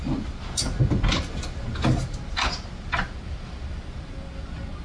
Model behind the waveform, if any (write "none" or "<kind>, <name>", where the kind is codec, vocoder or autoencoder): none